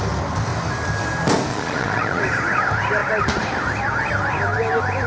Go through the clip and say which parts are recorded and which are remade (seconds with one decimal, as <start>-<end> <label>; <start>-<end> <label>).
0.0-1.5 recorded; 1.5-2.2 remade; 2.2-5.1 recorded

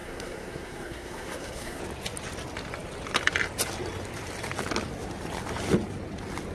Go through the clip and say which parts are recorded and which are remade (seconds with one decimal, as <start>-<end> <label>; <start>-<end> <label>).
0.0-1.8 remade; 1.8-6.5 recorded

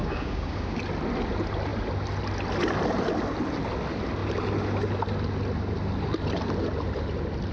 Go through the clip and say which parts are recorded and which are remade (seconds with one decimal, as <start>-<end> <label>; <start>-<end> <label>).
0.0-0.8 remade; 0.8-7.5 recorded

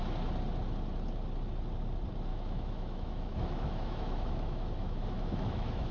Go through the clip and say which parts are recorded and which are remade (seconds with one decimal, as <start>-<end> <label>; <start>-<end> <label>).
0.0-2.3 recorded; 2.3-5.9 remade